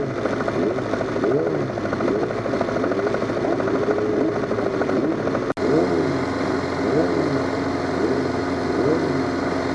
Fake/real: real